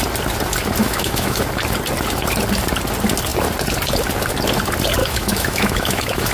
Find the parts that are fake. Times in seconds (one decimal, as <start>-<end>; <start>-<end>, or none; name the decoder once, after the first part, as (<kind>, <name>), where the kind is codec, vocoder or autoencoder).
0.8-1.4 (autoencoder, DAC-VAE); 5.0-6.3